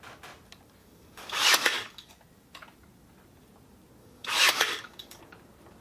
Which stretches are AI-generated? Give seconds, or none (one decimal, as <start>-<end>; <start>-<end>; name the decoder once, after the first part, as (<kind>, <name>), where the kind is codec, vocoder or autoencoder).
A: 0.8-2.1 (codec, DAC); 4.0-5.2